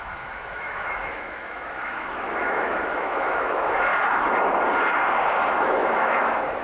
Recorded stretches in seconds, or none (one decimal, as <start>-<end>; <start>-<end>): 3.9-5.6